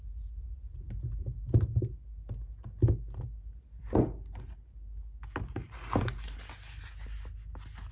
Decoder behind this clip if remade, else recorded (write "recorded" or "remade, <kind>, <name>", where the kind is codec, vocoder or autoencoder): recorded